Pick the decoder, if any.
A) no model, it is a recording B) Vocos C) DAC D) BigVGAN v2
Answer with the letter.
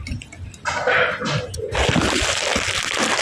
A